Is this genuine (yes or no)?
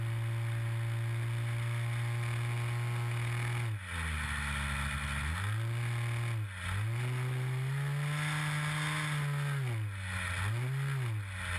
yes